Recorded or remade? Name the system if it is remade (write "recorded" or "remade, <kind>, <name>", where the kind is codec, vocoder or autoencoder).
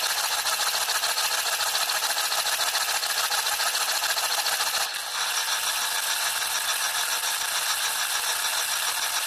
recorded